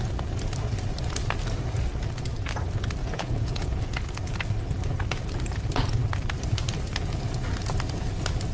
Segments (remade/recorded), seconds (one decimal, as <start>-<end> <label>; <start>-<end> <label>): 0.0-3.0 recorded; 3.0-3.9 remade; 3.9-8.5 recorded